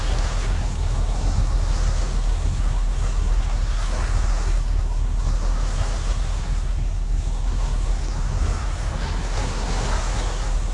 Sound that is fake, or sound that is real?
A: fake